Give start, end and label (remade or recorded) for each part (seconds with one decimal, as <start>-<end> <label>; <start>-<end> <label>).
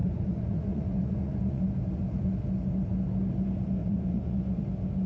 0.0-1.6 remade; 1.6-3.8 recorded; 3.8-4.6 remade; 4.6-5.1 recorded